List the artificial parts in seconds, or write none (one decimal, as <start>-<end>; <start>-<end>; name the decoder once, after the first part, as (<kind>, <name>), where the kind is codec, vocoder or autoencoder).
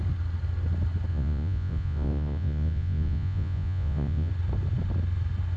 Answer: 1.1-4.3 (vocoder, Vocos)